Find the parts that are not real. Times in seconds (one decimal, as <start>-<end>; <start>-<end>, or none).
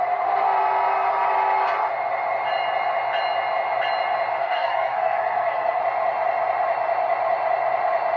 4.4-5.8